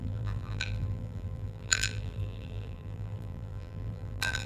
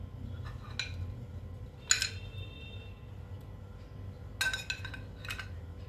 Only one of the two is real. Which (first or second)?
second